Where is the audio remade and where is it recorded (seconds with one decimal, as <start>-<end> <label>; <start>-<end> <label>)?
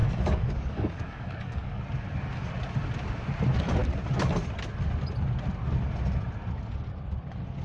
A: 0.0-1.8 remade; 1.8-7.6 recorded